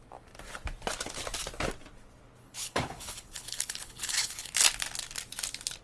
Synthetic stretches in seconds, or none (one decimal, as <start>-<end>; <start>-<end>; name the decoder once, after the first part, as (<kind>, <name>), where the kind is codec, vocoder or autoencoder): 2.4-4.5 (codec, HILCodec)